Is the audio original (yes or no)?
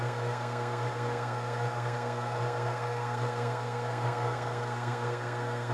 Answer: no